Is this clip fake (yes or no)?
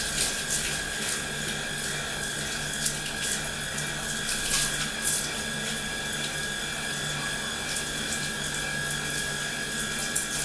no